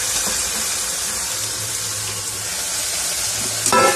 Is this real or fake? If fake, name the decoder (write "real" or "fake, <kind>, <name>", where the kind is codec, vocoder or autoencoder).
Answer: real